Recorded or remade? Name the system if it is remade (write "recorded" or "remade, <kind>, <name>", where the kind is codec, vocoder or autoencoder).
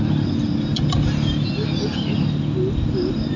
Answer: recorded